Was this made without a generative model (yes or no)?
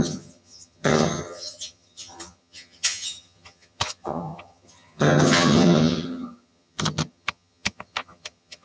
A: no